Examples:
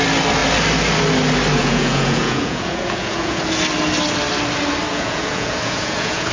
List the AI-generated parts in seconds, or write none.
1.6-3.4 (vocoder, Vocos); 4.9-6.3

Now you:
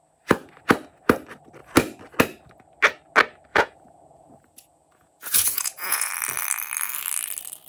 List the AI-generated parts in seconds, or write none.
3.5-6.1 (vocoder, Vocos)

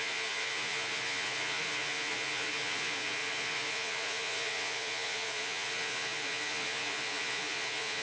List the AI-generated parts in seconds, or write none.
0.0-8.0 (vocoder, Vocos)

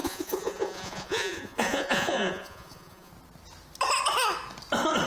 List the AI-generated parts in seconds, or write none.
0.0-3.1 (vocoder, Vocos)